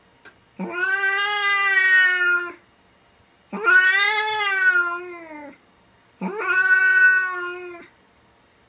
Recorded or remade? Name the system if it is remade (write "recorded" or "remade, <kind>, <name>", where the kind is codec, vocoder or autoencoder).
recorded